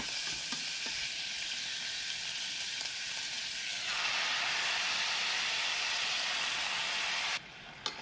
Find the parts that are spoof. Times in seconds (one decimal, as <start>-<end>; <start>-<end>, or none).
none

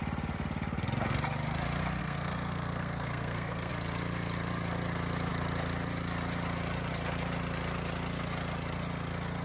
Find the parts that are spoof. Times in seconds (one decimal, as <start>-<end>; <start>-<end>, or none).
2.0-3.7

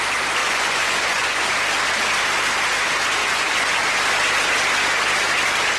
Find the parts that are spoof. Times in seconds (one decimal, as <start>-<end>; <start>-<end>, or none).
0.4-1.5; 3.2-3.8

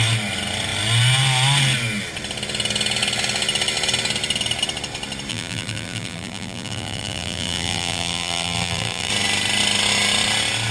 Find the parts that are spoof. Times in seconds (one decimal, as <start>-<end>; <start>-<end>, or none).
5.3-9.1

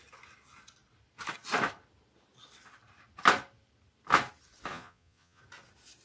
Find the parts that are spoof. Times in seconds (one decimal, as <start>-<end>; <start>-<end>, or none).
4.7-5.4

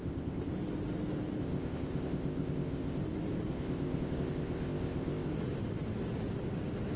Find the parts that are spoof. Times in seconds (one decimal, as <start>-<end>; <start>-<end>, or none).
0.0-0.5; 1.4-3.0; 3.5-5.3